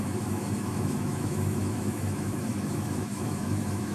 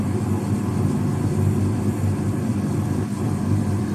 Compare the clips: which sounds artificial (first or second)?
first